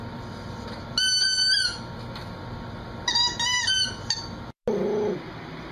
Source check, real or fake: real